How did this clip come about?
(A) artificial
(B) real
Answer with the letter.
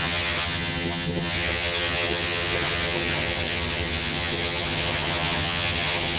A